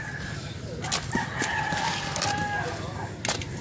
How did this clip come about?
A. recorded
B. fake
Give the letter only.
A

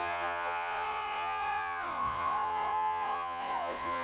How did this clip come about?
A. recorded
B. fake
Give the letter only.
B